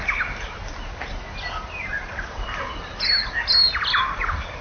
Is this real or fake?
real